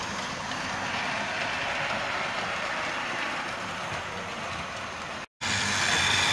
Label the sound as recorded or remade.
recorded